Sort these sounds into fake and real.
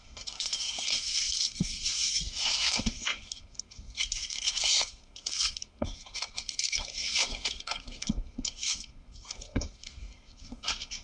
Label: fake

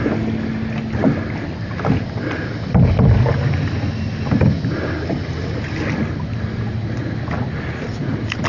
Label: real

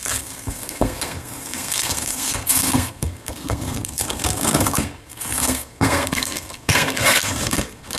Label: fake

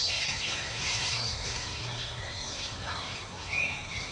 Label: fake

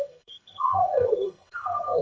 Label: fake